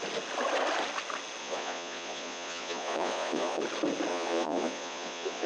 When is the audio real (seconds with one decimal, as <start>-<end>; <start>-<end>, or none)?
0.0-1.4; 3.6-4.1